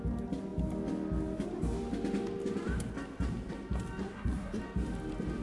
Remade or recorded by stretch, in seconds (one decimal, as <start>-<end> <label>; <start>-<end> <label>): 0.0-4.0 recorded; 4.0-4.6 remade; 4.6-5.4 recorded

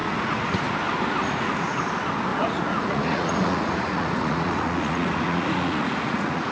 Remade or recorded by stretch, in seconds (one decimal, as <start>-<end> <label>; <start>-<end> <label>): 0.0-0.6 remade; 0.6-1.2 recorded; 1.2-1.8 remade; 1.8-2.3 recorded; 2.3-6.5 remade

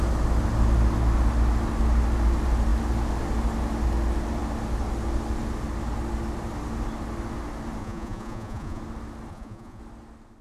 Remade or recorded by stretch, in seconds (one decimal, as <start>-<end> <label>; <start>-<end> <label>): 0.0-7.8 recorded; 7.8-8.8 remade; 8.8-9.3 recorded; 9.3-9.8 remade; 9.8-10.4 recorded

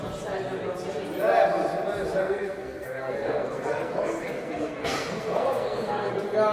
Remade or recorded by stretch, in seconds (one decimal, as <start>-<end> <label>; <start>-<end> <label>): 0.0-2.2 recorded; 2.2-6.1 remade; 6.1-6.5 recorded

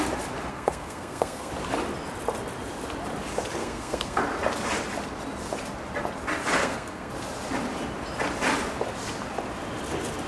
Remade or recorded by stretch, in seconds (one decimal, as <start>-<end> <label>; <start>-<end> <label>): 0.0-0.5 recorded; 0.5-1.5 remade; 1.5-3.6 recorded; 3.6-4.2 remade; 4.2-6.6 recorded; 6.6-7.1 remade; 7.1-10.3 recorded

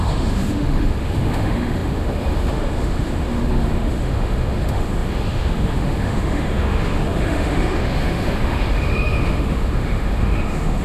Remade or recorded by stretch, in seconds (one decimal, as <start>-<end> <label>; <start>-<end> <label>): 0.0-10.8 remade